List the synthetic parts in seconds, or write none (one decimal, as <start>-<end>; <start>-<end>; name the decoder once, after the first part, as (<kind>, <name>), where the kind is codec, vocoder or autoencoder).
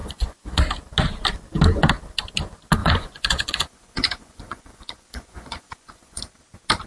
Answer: 0.0-0.6 (vocoder, Vocos); 2.8-6.2